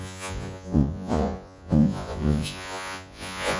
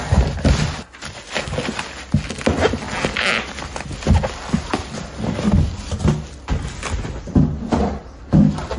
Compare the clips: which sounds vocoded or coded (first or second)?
first